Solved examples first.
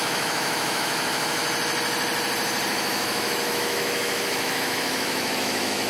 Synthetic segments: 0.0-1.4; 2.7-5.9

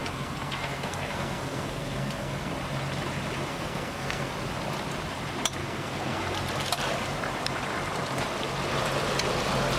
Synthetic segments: 0.0-2.5; 3.5-4.3; 5.6-6.2

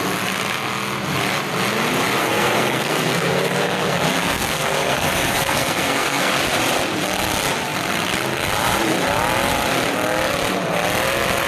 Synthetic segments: 2.2-6.3

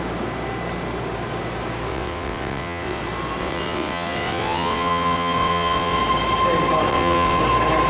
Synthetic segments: 1.9-3.0; 3.4-6.0; 6.9-7.4

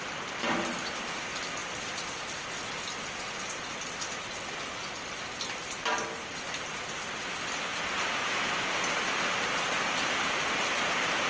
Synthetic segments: none

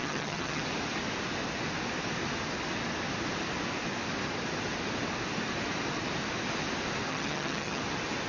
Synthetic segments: 0.0-0.6; 7.1-7.8